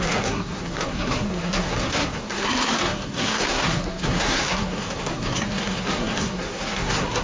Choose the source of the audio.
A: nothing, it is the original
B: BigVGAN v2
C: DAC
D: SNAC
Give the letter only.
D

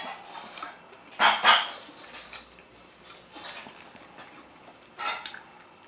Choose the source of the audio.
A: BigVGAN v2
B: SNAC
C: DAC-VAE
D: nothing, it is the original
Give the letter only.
D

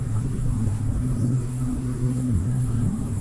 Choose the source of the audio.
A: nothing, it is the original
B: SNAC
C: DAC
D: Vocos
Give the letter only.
B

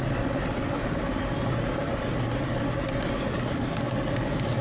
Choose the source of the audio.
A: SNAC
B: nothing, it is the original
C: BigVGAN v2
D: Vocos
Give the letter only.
B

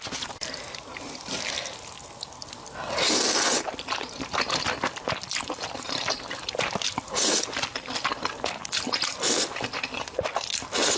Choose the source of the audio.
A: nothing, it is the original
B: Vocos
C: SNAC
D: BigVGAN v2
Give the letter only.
A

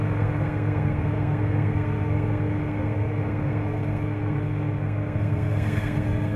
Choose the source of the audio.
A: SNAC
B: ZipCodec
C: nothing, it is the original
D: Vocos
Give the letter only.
A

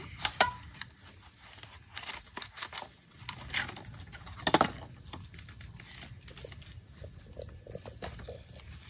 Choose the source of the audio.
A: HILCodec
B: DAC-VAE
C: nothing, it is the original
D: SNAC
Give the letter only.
C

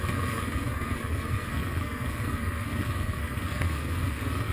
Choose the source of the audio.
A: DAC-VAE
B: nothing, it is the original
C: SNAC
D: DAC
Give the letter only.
C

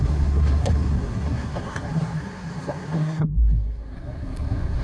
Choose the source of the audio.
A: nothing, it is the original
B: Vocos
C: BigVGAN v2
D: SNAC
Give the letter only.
D